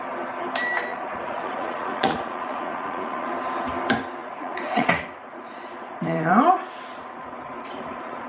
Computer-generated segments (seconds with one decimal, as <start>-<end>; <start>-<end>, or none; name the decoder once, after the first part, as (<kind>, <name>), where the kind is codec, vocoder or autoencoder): 0.9-3.3 (vocoder, Vocos); 4.2-6.3; 6.9-8.3